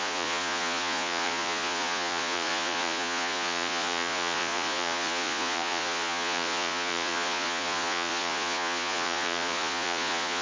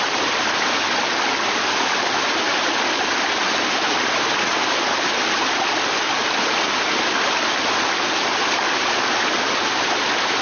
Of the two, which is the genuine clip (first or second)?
second